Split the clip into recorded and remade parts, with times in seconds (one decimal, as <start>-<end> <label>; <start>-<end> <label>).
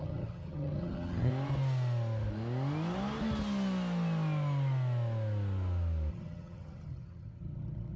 0.0-1.3 remade; 1.3-6.1 recorded; 6.1-8.0 remade